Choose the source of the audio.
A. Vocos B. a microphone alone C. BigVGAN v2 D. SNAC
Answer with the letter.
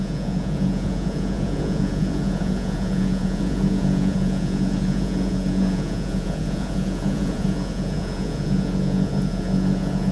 A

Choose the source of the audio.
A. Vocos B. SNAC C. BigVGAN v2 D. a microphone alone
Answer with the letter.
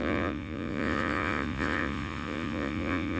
A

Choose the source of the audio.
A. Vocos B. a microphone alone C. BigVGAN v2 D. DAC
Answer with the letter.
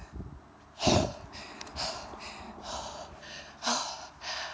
B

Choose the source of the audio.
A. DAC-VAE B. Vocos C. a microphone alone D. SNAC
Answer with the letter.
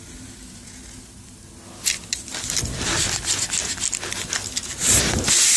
C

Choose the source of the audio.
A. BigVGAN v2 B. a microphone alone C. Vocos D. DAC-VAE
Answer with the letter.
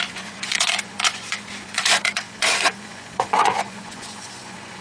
C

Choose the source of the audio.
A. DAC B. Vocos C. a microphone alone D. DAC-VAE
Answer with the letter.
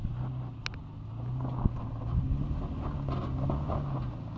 C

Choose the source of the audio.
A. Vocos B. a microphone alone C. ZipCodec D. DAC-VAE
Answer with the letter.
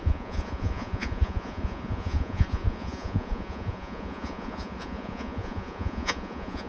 A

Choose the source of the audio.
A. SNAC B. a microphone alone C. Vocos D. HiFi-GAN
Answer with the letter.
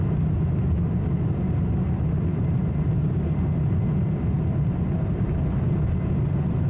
B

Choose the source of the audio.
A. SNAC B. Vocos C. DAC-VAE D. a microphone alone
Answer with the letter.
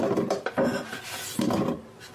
D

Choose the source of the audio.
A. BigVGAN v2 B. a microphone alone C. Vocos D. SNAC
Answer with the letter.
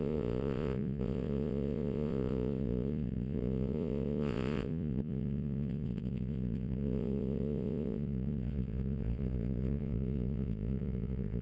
C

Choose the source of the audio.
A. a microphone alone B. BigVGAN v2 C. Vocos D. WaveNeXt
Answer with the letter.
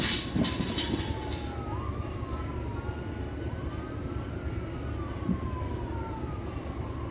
A